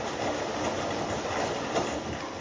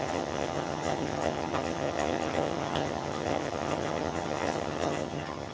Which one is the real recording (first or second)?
first